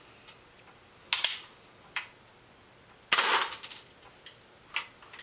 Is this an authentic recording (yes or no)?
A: yes